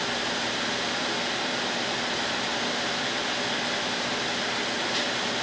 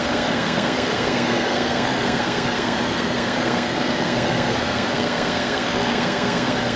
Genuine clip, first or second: first